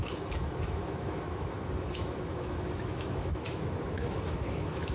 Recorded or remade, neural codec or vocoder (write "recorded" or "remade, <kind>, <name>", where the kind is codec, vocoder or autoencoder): remade, autoencoder, DAC-VAE